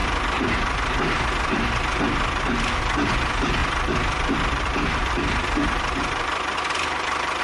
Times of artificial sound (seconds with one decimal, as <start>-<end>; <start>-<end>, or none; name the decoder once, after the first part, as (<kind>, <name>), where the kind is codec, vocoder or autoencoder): 3.6-7.4 (vocoder, BigVGAN v2)